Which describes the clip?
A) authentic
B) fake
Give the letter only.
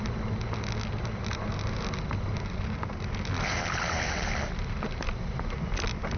A